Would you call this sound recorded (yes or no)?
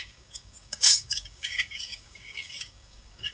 no